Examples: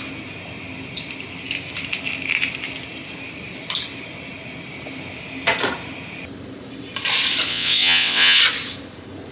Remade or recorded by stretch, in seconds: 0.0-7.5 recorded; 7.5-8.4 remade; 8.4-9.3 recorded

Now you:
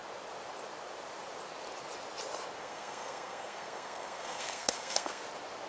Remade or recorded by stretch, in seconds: 0.0-2.6 recorded; 2.6-5.2 remade; 5.2-5.7 recorded

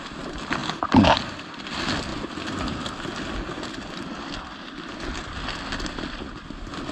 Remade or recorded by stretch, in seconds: 0.0-6.9 recorded

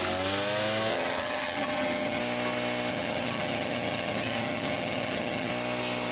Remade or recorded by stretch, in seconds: 0.0-0.9 recorded; 0.9-2.2 remade; 2.2-2.9 recorded; 2.9-5.5 remade; 5.5-6.1 recorded

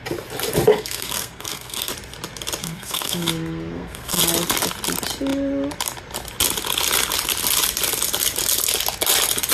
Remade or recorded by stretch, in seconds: 0.0-0.7 recorded; 0.7-1.9 remade; 1.9-2.6 recorded; 2.6-4.2 remade; 4.2-9.5 recorded

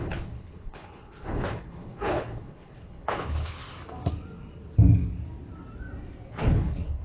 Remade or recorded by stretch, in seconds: 0.0-3.7 remade; 3.7-6.3 recorded; 6.3-7.0 remade